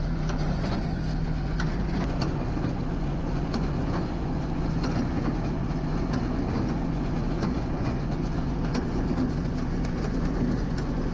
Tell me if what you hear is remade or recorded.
remade